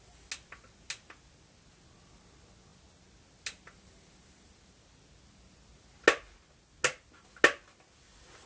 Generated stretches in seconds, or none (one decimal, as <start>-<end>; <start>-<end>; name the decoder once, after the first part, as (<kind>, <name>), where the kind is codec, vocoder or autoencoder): none